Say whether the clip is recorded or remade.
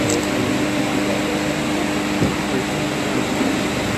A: recorded